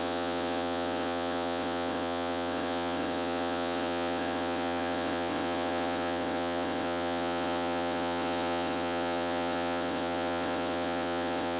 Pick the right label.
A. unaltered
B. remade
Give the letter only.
B